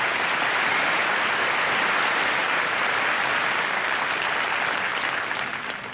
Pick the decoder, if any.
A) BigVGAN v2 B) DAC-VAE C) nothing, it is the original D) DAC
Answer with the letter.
C